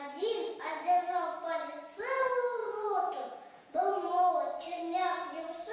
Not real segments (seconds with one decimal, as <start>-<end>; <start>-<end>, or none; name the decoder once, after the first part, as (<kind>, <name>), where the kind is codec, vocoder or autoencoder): 2.6-4.3 (vocoder, Vocos)